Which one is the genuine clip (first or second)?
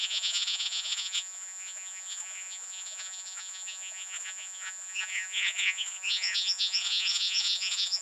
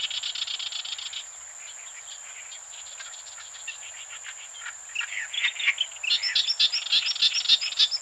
second